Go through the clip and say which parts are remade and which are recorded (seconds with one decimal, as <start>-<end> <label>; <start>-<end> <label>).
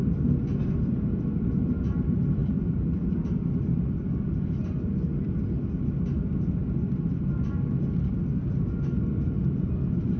0.0-2.4 recorded; 2.4-3.1 remade; 3.1-10.2 recorded